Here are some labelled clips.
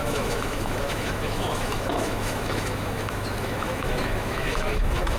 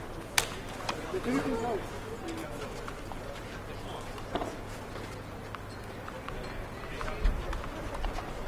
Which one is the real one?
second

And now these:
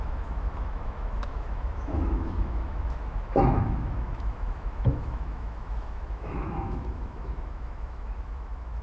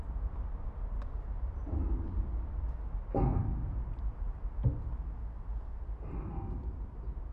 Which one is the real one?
second